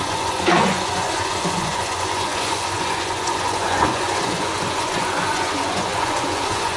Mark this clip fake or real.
fake